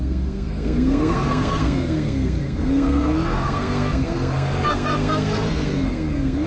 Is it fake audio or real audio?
fake